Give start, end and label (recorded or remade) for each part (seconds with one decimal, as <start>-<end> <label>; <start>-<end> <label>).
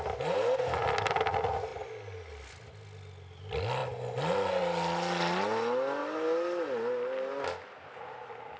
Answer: 0.0-8.6 recorded